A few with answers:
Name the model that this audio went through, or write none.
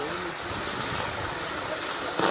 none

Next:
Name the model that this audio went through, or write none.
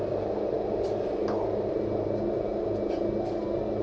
none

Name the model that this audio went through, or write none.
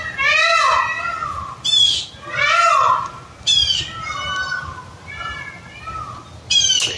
none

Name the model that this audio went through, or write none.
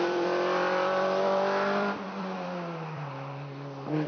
vocoder, BigVGAN v2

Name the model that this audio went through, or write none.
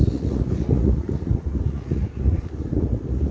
vocoder, Vocos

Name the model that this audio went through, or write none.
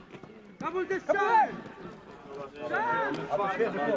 none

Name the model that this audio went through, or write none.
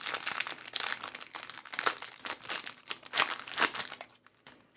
none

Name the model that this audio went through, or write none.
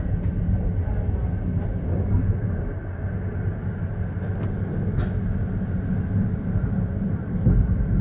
none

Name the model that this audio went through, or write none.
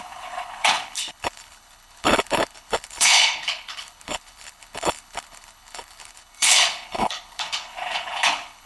codec, HILCodec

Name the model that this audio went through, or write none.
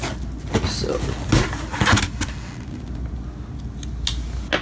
none